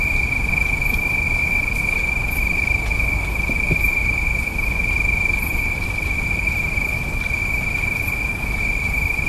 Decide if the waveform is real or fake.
fake